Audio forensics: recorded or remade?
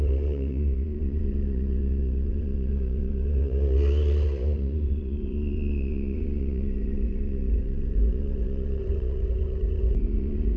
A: remade